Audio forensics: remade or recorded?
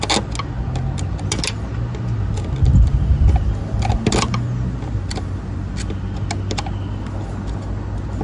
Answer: recorded